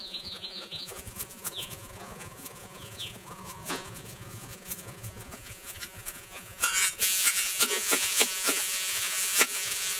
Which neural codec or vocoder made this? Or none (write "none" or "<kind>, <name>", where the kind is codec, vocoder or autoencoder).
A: vocoder, Vocos